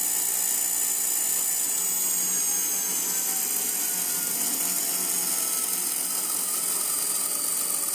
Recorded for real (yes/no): yes